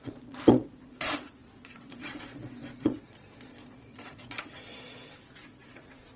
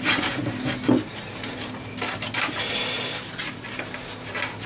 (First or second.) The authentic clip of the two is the second